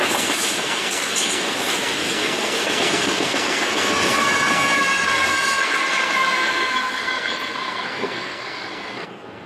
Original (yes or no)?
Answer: no